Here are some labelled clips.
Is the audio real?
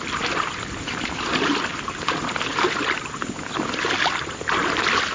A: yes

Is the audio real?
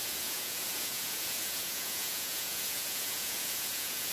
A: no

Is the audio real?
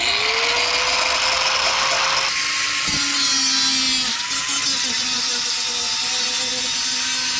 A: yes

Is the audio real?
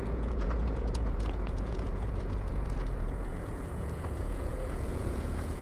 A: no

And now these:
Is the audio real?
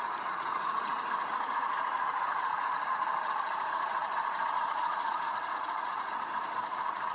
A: no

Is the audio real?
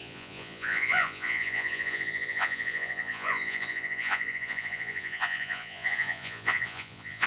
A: no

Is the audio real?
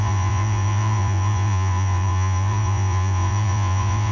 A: no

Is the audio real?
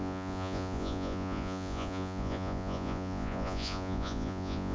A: no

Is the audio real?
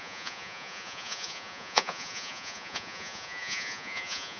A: no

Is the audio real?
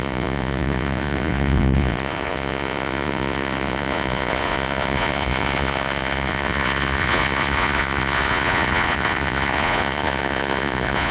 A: no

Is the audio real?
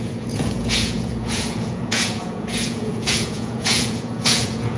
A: no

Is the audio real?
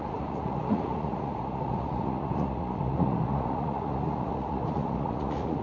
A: no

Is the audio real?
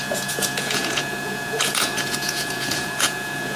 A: no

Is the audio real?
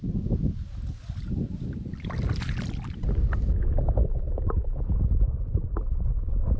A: yes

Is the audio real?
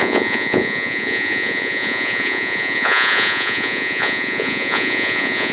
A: no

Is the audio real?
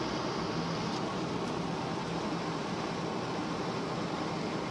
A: yes